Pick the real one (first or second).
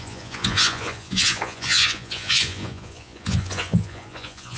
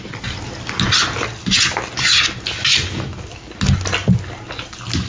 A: second